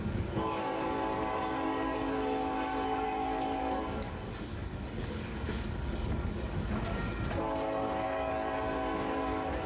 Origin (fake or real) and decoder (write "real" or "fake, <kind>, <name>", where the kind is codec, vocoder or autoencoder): fake, codec, DAC